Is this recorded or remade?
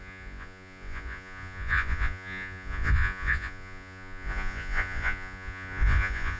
remade